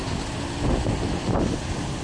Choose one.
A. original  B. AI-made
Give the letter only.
A